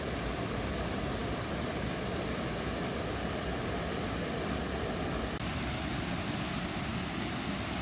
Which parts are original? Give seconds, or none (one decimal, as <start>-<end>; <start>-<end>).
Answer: 0.0-7.8